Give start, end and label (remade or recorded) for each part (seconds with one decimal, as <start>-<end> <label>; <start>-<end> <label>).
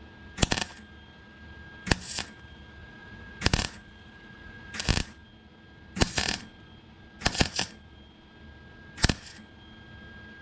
0.0-2.8 recorded; 2.8-4.7 remade; 4.7-10.4 recorded